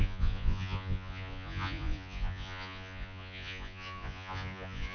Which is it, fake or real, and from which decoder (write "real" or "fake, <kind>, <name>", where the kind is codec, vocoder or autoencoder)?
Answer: fake, vocoder, Vocos